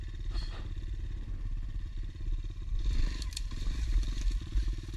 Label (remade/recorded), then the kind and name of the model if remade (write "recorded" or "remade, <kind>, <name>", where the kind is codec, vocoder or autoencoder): remade, vocoder, BigVGAN v2